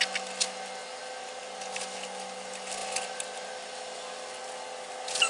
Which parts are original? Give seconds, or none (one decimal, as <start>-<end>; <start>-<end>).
0.0-5.3